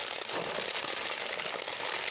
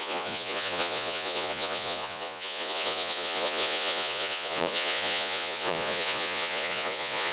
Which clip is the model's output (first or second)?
second